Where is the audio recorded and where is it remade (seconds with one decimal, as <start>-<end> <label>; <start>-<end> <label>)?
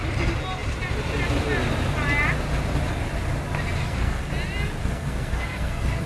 0.0-3.8 recorded; 3.8-4.3 remade; 4.3-4.8 recorded; 4.8-6.1 remade